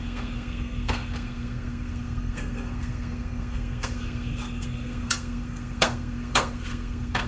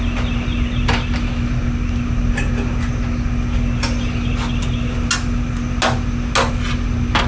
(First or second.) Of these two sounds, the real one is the second